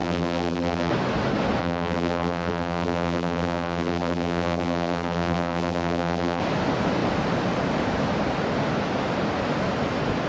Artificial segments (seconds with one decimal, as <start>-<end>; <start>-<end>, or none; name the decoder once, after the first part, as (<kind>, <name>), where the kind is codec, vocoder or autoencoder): 0.0-0.9 (vocoder, BigVGAN v2); 1.6-6.4